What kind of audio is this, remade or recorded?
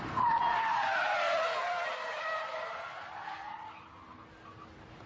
recorded